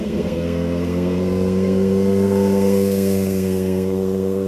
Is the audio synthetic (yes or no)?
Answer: yes